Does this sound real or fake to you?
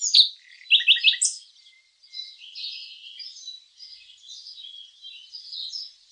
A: real